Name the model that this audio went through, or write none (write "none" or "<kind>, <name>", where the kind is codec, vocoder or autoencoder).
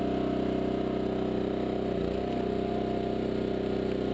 none